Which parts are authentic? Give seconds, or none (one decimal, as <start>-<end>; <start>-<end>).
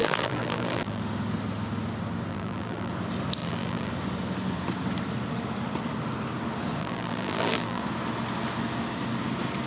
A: 1.0-2.3; 2.9-3.4; 3.9-6.8; 7.8-9.7